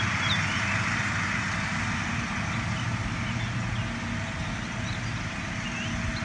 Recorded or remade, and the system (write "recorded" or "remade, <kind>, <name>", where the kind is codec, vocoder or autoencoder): recorded